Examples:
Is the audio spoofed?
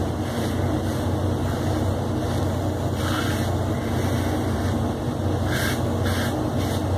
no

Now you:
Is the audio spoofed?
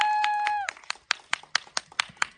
no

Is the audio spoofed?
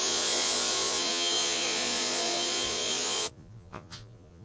yes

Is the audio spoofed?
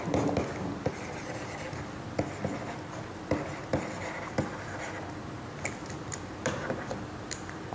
no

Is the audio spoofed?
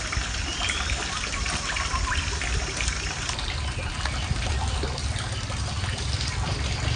no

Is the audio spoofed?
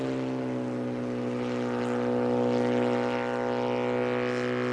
no